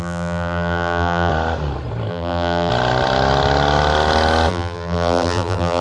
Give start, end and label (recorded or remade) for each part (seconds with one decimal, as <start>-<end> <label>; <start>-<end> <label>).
0.0-1.3 remade; 1.3-2.1 recorded; 2.1-2.7 remade; 2.7-4.5 recorded; 4.5-5.8 remade